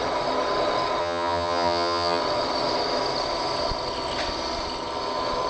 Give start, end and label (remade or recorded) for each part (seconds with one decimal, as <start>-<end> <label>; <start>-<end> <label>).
0.0-1.0 recorded; 1.0-2.2 remade; 2.2-5.5 recorded